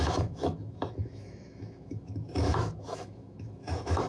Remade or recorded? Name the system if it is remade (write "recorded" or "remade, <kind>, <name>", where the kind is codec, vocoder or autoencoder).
remade, autoencoder, DAC-VAE